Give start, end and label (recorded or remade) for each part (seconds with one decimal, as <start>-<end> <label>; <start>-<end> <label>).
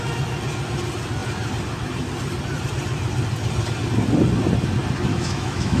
0.0-5.1 recorded; 5.1-5.8 remade